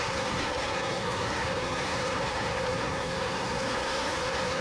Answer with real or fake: fake